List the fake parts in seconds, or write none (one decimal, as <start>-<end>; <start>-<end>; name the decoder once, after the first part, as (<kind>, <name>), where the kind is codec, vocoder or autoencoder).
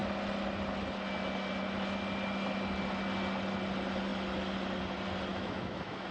5.3-6.1 (autoencoder, DAC-VAE)